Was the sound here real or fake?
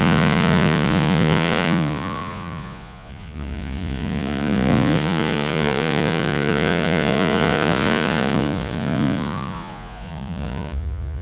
fake